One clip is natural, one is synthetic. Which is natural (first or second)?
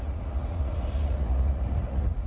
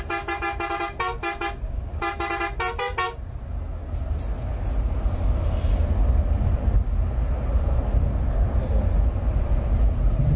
second